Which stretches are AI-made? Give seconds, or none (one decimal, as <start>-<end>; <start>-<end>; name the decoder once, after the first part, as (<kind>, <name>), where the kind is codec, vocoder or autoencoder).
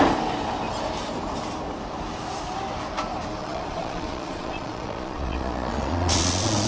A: 3.4-6.7 (vocoder, Vocos)